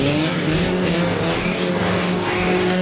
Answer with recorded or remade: remade